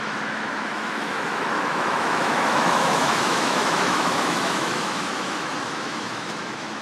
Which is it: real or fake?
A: fake